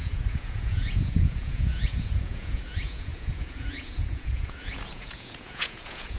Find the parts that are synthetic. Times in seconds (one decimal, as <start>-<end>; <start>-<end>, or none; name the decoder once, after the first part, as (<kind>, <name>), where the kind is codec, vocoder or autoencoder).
0.0-6.2 (vocoder, Vocos)